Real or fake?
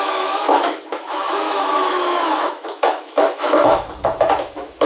fake